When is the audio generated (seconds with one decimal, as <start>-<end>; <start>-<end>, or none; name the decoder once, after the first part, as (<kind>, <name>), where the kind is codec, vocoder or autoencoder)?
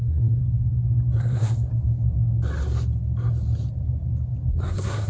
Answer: 0.0-0.4 (codec, SNAC); 1.2-1.7; 4.5-5.1